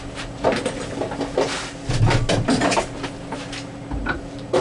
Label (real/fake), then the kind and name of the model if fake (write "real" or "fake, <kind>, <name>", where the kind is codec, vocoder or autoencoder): real